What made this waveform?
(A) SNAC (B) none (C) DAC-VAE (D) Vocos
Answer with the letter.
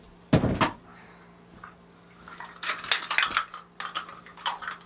B